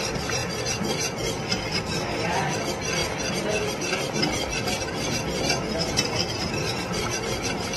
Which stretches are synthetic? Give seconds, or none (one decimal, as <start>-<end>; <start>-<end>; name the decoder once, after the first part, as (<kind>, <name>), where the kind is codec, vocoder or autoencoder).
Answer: none